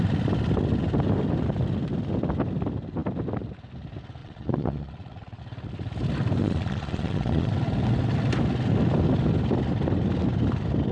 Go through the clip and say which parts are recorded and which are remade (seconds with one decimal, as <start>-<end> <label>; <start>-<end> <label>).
0.0-4.2 recorded; 4.2-5.4 remade; 5.4-6.4 recorded; 6.4-7.5 remade; 7.5-10.9 recorded